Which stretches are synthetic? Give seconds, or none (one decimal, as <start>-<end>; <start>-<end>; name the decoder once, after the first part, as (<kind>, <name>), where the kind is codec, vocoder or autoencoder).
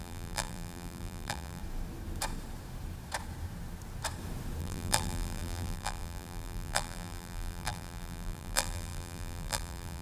0.0-1.6 (vocoder, BigVGAN v2); 4.6-10.0